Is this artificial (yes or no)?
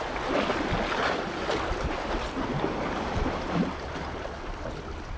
no